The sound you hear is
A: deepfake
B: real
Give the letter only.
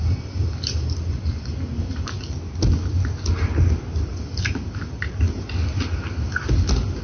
B